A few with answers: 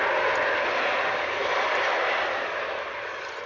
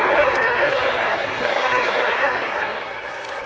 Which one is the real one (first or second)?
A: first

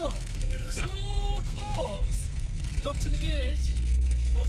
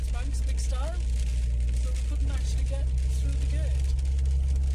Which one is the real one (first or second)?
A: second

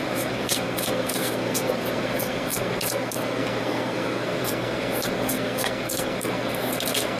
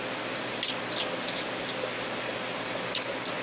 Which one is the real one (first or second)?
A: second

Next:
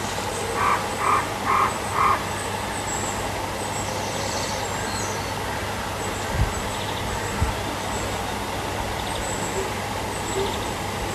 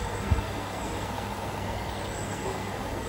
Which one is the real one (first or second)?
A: first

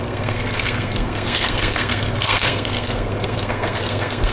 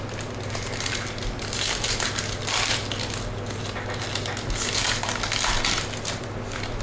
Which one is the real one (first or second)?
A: second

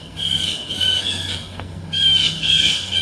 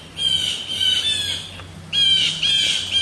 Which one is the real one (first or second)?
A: second